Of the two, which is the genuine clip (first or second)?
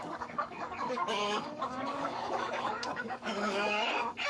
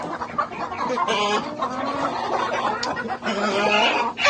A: second